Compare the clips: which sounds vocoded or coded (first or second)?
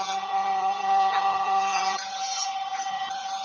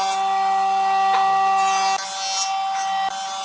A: first